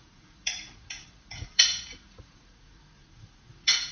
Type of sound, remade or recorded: remade